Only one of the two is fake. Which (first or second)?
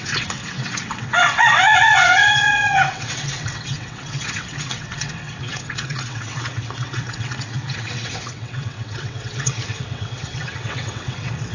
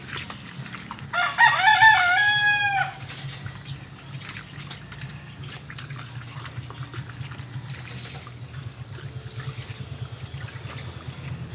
first